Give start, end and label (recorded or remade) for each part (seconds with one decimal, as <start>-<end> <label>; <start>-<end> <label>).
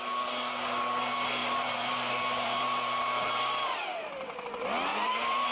0.0-1.4 recorded; 1.4-4.1 remade; 4.1-4.9 recorded; 4.9-5.5 remade